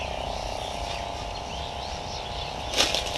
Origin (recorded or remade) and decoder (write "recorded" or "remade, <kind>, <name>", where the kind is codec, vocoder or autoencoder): recorded